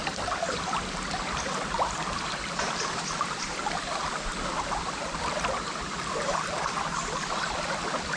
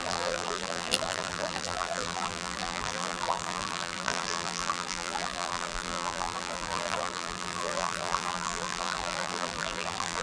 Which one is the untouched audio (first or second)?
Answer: first